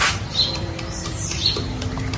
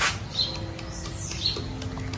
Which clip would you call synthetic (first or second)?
first